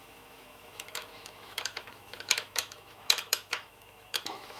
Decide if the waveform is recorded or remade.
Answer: remade